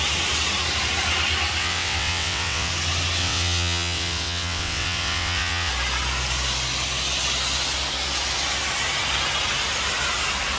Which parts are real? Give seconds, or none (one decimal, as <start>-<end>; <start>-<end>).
0.0-1.6; 2.7-3.2; 5.7-10.6